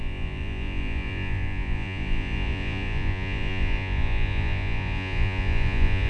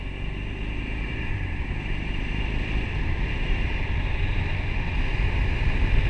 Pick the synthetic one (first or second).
first